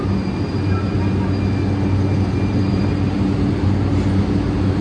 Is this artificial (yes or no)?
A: no